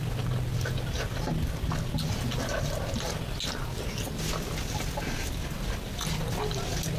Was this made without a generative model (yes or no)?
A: yes